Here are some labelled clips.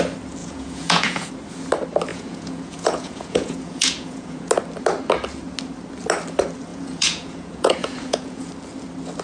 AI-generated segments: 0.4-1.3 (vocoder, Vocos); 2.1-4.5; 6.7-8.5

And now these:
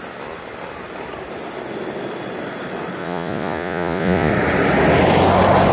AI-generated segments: 3.0-4.3 (vocoder, Vocos)

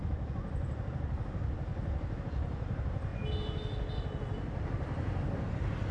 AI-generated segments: 0.9-1.7 (vocoder, BigVGAN v2); 2.2-3.1; 5.5-5.9

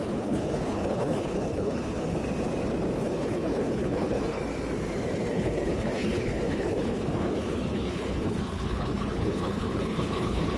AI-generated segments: 0.0-2.2 (codec, HILCodec); 3.0-4.4; 5.3-10.6

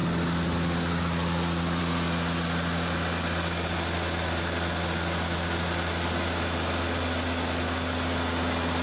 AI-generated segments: none

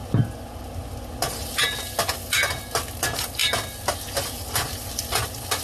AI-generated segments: none

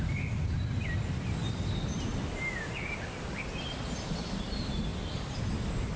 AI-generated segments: none

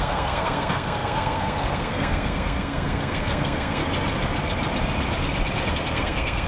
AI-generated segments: 0.0-3.8 (codec, SNAC); 5.7-6.5